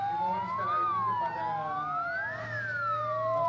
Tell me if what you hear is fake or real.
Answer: real